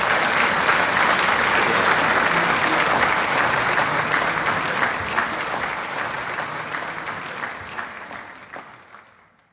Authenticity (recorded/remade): recorded